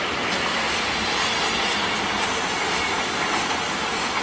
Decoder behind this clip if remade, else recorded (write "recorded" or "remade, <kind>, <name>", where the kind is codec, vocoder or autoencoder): recorded